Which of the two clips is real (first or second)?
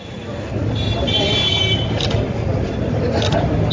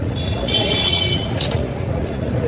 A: first